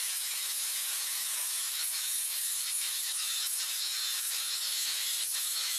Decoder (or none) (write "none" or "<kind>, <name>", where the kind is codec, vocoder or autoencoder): autoencoder, DAC-VAE